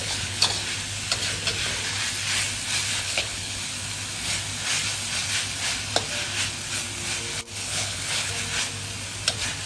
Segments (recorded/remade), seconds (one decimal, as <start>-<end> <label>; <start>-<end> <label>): 0.0-0.5 remade; 0.5-2.9 recorded; 2.9-3.6 remade; 3.6-7.3 recorded; 7.3-8.3 remade; 8.3-9.7 recorded